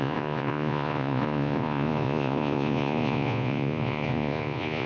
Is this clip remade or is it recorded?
remade